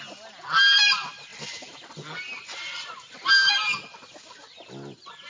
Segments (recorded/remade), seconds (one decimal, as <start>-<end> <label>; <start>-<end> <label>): 0.0-5.3 recorded